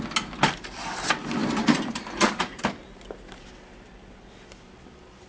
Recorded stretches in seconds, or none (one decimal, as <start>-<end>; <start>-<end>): 0.0-1.4; 2.7-5.3